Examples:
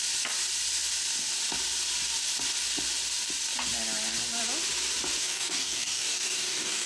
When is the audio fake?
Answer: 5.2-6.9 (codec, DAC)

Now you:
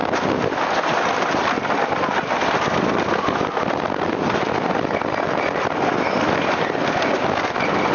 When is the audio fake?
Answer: none

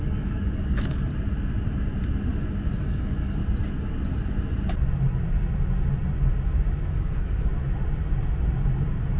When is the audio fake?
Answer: 0.0-1.1 (codec, DAC); 2.8-3.4; 6.9-7.5